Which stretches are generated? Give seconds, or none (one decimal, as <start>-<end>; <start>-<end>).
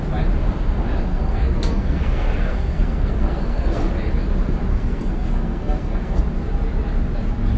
1.1-3.9; 4.7-6.2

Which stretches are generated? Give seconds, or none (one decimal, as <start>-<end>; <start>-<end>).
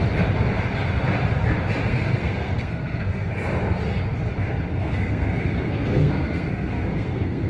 1.8-3.3; 4.7-7.5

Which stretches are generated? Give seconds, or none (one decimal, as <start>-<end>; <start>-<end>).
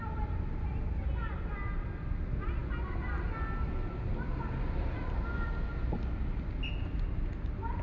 none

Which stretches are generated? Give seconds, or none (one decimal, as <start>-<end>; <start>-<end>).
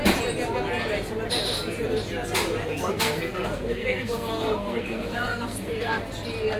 2.6-6.0